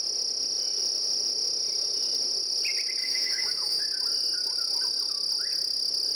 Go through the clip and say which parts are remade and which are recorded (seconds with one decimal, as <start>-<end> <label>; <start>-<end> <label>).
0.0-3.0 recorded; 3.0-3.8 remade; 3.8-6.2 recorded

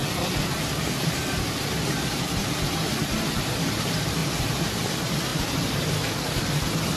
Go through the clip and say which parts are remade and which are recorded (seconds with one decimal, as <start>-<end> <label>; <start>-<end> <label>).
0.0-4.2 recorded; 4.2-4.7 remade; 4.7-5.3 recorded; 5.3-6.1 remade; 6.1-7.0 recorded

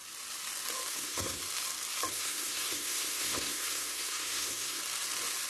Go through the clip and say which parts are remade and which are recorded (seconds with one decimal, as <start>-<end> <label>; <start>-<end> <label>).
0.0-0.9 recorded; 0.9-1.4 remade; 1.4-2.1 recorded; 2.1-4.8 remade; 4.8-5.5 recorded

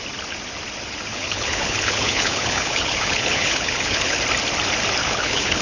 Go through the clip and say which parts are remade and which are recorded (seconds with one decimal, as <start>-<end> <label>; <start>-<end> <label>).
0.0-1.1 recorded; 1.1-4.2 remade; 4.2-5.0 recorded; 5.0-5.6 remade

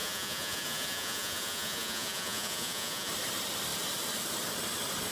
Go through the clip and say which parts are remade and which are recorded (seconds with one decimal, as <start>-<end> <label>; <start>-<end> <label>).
0.0-3.1 remade; 3.1-5.1 recorded

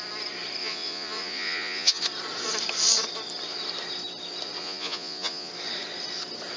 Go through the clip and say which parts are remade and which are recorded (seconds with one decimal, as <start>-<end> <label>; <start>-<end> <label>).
0.0-0.6 recorded; 0.6-2.0 remade; 2.0-4.6 recorded; 4.6-5.5 remade; 5.5-6.6 recorded

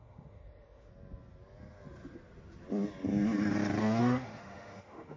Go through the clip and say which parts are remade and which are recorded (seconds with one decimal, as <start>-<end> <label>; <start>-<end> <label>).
0.0-0.9 remade; 0.9-4.0 recorded; 4.0-5.2 remade